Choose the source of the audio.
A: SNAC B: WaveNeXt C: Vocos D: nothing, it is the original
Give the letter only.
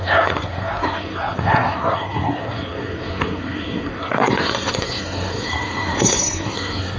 A